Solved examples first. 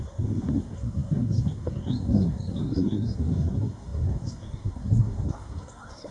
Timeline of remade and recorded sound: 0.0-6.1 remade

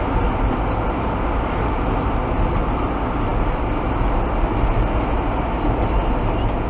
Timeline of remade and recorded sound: 0.0-6.7 recorded